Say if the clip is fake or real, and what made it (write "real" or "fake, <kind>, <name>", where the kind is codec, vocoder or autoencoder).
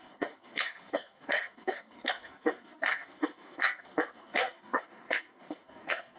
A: fake, codec, SNAC